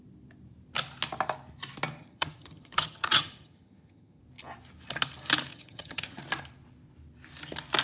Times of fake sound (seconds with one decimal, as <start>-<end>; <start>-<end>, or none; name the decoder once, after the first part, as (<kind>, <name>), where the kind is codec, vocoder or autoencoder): 2.0-4.2 (vocoder, HiFi-GAN); 5.5-6.2